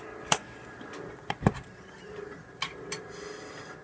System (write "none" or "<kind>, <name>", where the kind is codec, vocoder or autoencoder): none